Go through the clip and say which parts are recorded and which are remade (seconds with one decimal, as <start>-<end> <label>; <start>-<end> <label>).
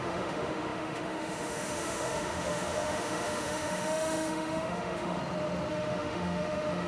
0.0-5.2 remade; 5.2-5.7 recorded; 5.7-6.9 remade